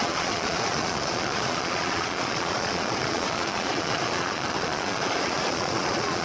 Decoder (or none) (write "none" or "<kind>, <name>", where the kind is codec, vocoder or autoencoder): vocoder, Vocos